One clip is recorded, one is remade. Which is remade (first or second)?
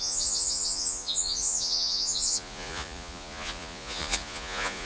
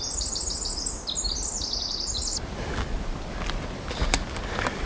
first